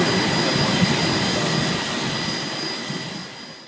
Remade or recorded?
recorded